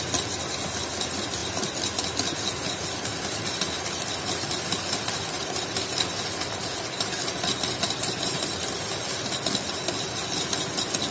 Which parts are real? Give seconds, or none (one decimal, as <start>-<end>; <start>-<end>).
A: 0.0-11.1